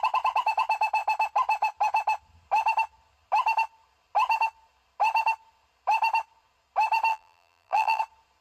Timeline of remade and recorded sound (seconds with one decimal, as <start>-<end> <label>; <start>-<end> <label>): 0.0-7.1 recorded; 7.1-8.0 remade; 8.0-8.4 recorded